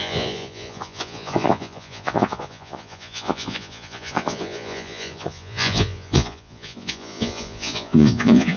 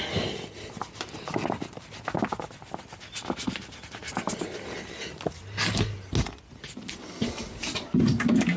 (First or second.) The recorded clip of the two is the second